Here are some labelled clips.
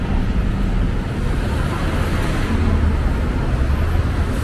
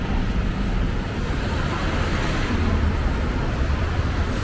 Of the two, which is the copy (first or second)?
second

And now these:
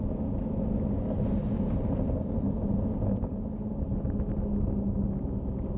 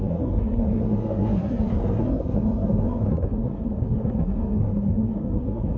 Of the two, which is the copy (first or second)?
second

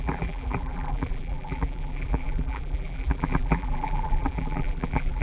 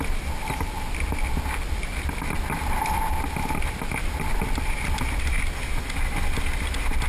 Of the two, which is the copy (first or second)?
first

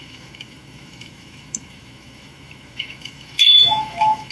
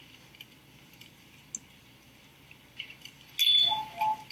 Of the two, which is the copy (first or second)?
first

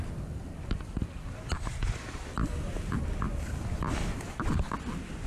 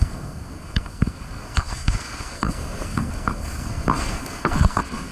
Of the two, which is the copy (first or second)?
second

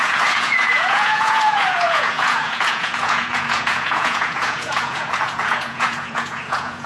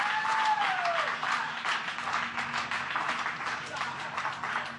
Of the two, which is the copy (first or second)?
first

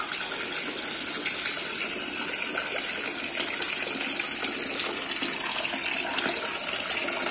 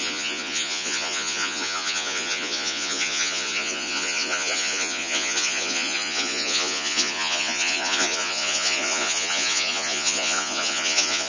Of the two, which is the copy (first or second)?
second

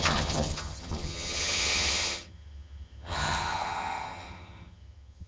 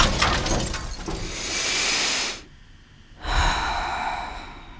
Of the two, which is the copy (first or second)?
first